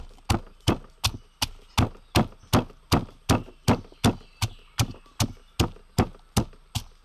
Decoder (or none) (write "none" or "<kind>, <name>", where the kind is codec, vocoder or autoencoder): none